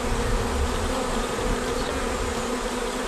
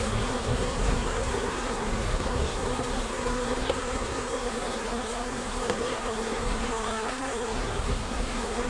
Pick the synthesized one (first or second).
second